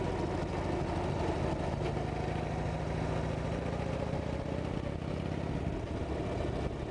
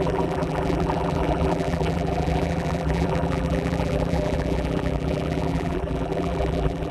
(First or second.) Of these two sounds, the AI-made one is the second